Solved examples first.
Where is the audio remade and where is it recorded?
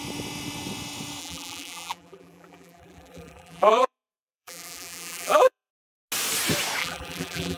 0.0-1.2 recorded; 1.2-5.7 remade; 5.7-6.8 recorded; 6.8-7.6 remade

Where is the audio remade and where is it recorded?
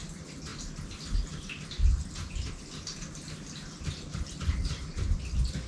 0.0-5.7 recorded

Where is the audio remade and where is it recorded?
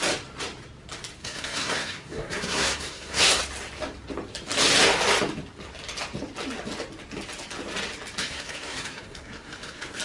0.0-1.2 recorded; 1.2-3.4 remade; 3.4-8.2 recorded; 8.2-10.0 remade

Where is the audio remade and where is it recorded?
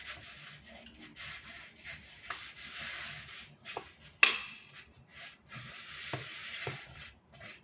0.0-0.5 remade; 0.5-1.1 recorded; 1.1-2.8 remade; 2.8-5.1 recorded; 5.1-5.9 remade; 5.9-6.4 recorded; 6.4-7.6 remade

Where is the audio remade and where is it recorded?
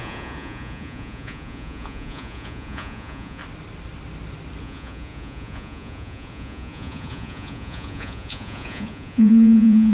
0.0-3.4 remade; 3.4-4.6 recorded; 4.6-9.9 remade